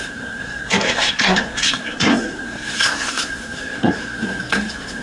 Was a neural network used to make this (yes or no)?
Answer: yes